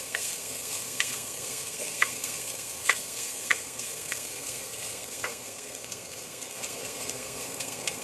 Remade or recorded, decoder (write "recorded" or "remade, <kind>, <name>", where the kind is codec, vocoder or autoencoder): remade, codec, SNAC